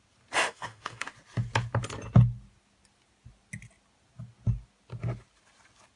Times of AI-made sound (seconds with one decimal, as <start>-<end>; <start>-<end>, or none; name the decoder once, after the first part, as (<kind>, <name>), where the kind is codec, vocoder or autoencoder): 0.4-1.1 (autoencoder, DAC-VAE)